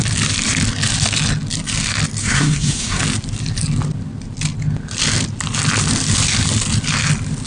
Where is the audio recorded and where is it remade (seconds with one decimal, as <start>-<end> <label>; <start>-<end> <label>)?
0.0-2.2 recorded; 2.2-3.0 remade; 3.0-7.5 recorded